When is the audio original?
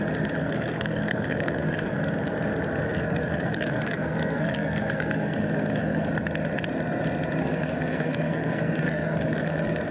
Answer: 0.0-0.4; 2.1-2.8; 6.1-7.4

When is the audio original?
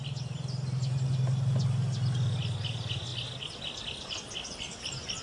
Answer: 0.0-5.2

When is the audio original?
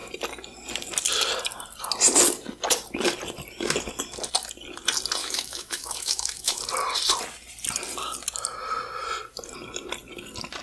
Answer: 0.0-5.2; 6.6-10.6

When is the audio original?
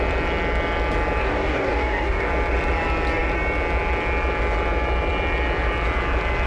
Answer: 0.0-1.2; 2.3-6.5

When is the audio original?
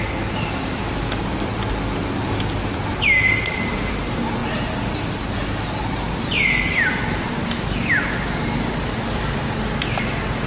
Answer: 0.0-10.5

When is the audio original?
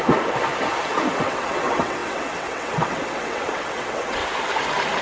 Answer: 0.0-1.1; 4.2-5.0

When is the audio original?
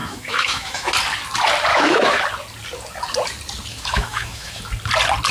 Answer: 0.9-1.7; 2.2-3.7; 4.6-5.3